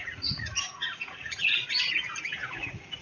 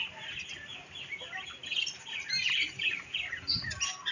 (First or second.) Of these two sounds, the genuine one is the second